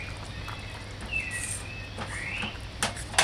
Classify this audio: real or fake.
real